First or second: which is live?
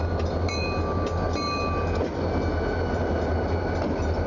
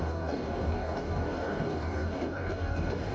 first